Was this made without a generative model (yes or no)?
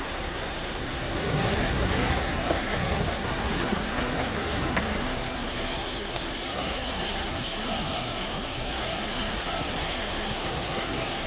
no